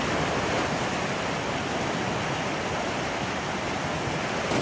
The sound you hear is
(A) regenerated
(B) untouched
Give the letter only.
B